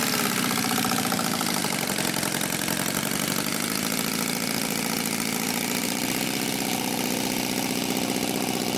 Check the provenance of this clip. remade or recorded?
recorded